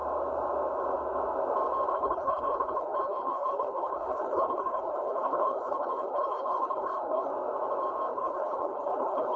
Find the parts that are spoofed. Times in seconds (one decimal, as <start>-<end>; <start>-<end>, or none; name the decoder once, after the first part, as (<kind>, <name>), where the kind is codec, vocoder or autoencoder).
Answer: 1.9-7.3 (codec, HILCodec); 8.1-9.4